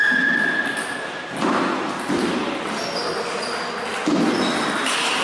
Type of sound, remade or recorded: recorded